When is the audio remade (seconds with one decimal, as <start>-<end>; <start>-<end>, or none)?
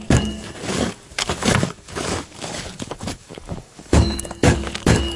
0.0-5.2